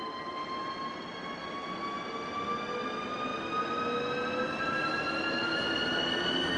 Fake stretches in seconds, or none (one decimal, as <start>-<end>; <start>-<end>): none